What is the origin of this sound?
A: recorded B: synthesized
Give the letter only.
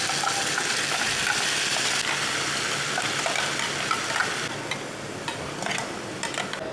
A